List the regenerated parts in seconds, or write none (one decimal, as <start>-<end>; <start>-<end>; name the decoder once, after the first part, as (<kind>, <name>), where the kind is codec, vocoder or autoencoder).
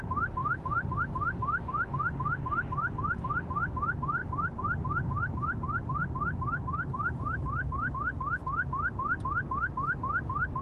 0.4-1.0 (vocoder, BigVGAN v2); 1.4-1.9; 4.2-7.9